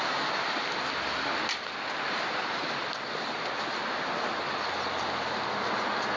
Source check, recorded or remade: recorded